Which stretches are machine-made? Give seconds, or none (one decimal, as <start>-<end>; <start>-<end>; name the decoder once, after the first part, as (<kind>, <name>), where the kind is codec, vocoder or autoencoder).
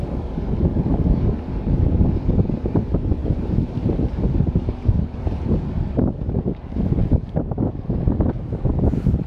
0.0-9.3 (codec, DAC)